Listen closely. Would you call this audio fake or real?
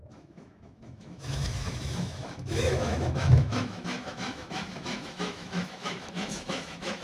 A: fake